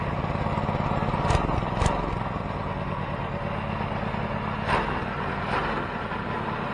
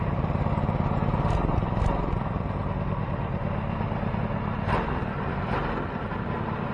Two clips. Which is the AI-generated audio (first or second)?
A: second